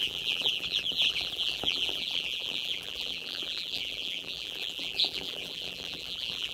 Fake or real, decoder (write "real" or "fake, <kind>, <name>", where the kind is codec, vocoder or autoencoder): fake, vocoder, BigVGAN v2